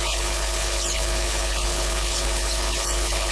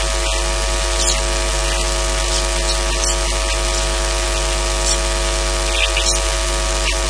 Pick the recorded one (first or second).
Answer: second